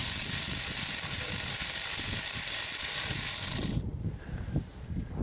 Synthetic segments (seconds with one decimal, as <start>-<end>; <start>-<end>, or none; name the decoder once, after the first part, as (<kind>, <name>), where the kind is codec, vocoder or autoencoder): 0.0-3.1 (vocoder, BigVGAN v2); 3.9-4.7